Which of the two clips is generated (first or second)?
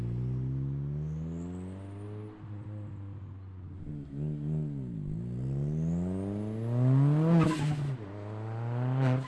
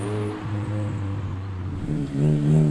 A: second